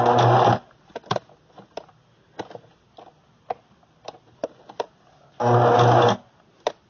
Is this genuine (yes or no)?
yes